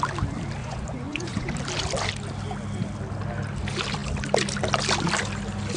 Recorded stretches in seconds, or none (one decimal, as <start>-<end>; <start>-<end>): 0.0-0.6; 1.5-5.8